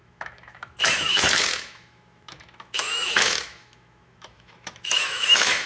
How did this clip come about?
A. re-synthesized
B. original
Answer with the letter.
A